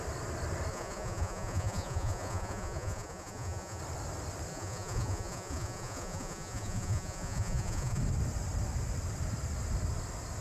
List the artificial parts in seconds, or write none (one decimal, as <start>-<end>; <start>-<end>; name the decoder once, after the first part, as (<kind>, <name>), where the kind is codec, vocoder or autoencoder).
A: 0.7-3.8 (vocoder, Vocos); 4.5-8.0